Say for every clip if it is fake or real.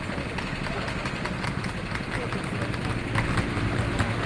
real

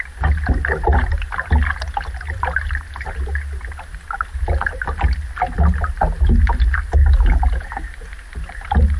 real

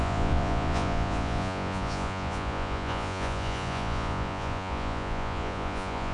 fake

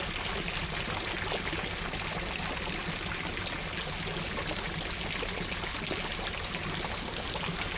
real